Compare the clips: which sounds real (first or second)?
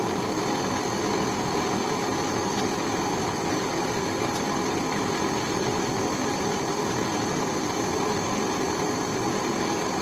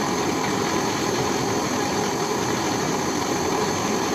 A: first